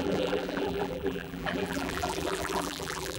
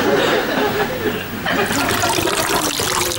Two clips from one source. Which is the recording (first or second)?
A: second